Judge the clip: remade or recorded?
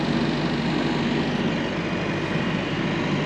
recorded